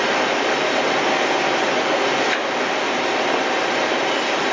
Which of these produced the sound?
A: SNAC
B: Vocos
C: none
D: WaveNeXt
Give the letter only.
C